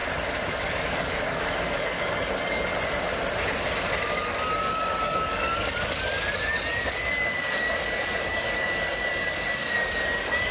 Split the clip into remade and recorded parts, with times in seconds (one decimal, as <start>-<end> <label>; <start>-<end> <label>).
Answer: 0.0-0.5 recorded; 0.5-2.7 remade; 2.7-4.1 recorded; 4.1-10.5 remade